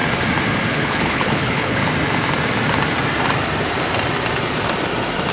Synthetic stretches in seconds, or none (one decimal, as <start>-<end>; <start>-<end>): 0.7-1.8